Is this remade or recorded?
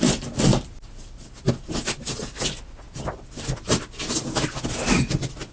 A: recorded